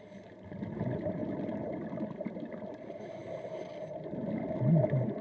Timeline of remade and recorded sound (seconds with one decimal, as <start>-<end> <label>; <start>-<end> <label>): 0.0-5.2 recorded